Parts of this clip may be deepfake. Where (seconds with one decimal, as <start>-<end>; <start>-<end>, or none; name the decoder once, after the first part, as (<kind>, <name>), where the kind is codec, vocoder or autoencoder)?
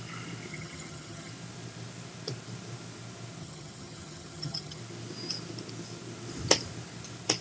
0.5-1.3 (vocoder, HiFi-GAN); 3.4-4.8